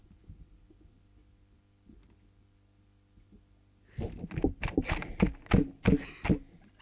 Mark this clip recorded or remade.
recorded